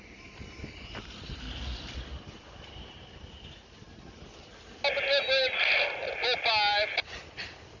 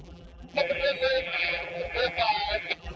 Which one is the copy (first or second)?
second